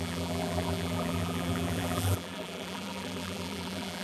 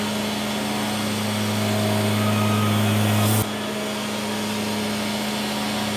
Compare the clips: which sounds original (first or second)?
second